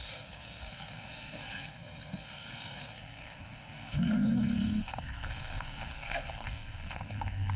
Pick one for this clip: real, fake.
fake